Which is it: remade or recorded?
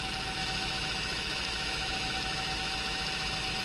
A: remade